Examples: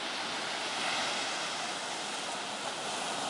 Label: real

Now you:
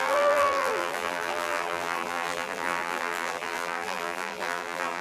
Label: fake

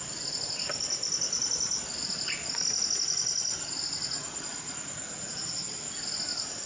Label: real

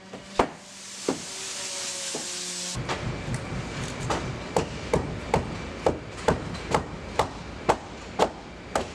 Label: real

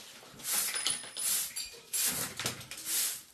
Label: real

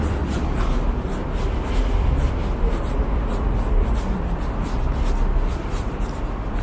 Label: real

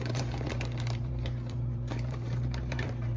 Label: fake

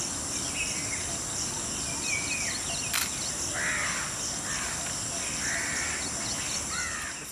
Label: real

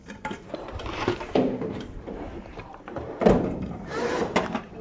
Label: fake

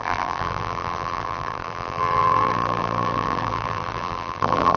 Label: fake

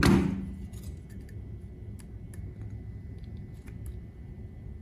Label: real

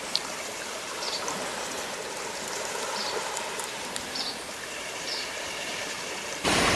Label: fake